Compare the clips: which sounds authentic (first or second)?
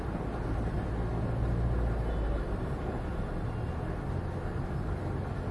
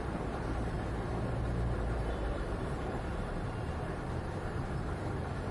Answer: first